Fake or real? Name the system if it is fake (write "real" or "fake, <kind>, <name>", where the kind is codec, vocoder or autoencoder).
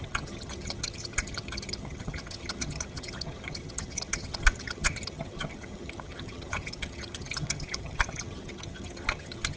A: fake, vocoder, HiFi-GAN